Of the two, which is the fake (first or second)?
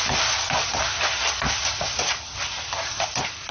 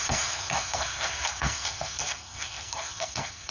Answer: second